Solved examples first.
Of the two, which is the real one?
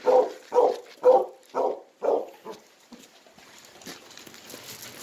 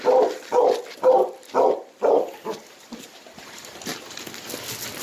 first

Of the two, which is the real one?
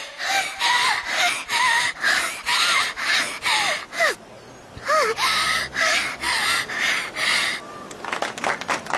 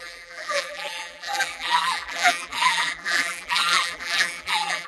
first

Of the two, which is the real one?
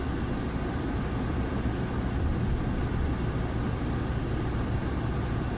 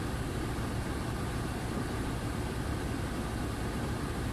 first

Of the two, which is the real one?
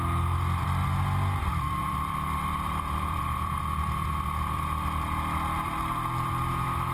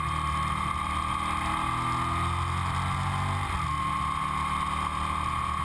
second